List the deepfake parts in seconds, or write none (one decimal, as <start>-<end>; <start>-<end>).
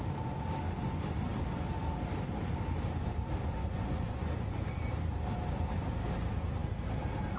3.6-4.9